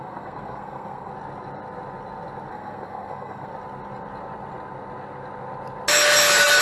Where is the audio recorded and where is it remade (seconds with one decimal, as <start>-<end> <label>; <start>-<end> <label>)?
0.0-1.1 remade; 1.1-2.5 recorded; 2.5-3.5 remade; 3.5-6.6 recorded